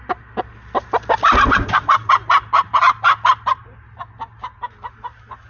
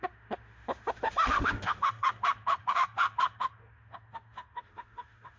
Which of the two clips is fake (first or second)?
second